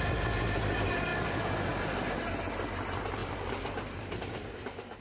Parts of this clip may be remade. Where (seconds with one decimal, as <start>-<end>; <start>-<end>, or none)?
none